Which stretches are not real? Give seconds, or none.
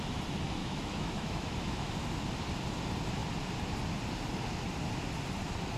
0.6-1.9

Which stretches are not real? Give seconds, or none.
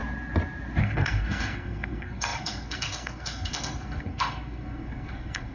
0.8-5.5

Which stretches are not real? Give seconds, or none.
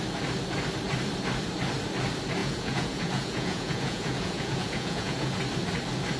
2.4-5.4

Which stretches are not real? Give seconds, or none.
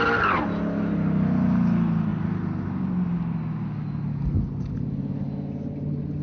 none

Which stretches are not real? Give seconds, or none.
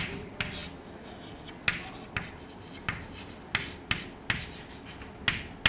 none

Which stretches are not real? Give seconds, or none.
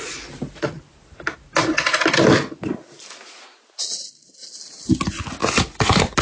none